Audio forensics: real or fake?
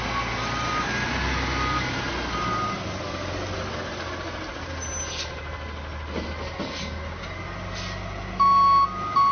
real